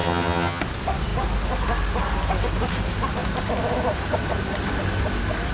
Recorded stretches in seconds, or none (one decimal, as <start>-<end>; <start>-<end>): 0.6-5.5

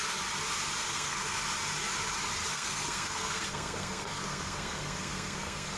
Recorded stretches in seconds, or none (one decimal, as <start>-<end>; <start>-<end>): 0.0-0.8; 1.4-2.5

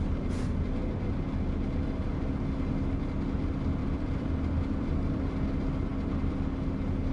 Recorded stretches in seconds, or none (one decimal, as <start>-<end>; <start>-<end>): 0.0-3.8; 5.2-7.1

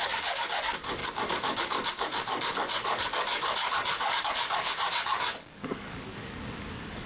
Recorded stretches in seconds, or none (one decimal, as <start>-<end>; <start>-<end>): none

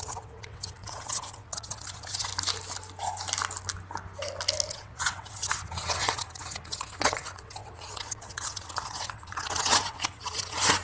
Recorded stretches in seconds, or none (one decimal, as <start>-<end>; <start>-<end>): 2.3-4.7

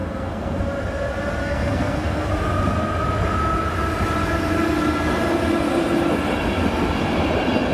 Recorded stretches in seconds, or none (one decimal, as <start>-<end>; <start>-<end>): 0.6-1.4; 2.3-7.7

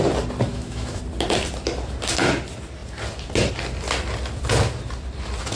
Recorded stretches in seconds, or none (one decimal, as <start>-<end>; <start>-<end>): 0.0-0.5; 1.0-5.6